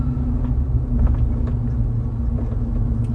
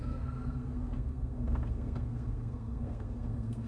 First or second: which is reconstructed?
second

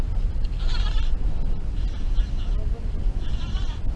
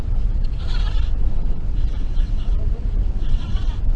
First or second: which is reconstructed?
second